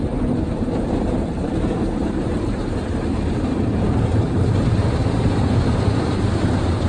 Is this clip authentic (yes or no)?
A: no